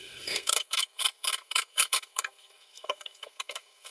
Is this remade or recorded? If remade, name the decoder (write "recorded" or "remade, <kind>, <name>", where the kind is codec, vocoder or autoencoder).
remade, codec, SNAC